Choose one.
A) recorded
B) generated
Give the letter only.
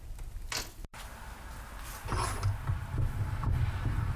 A